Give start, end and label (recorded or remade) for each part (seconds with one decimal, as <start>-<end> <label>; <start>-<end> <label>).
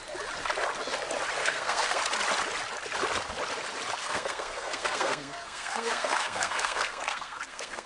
0.0-1.4 recorded; 1.4-2.0 remade; 2.0-4.0 recorded; 4.0-7.9 remade